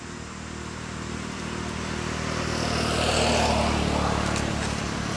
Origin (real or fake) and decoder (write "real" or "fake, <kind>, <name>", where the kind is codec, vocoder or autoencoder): real